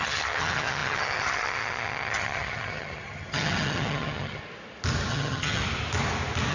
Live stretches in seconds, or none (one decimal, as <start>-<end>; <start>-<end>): 4.4-5.1; 5.6-6.5